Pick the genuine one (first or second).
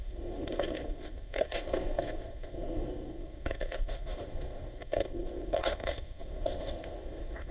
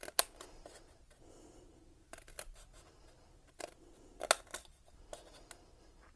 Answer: second